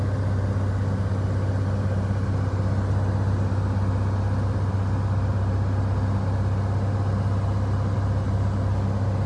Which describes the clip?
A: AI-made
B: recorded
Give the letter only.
B